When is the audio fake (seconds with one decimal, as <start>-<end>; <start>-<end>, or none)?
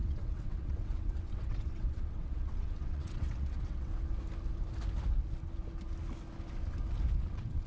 0.0-3.9; 7.2-7.7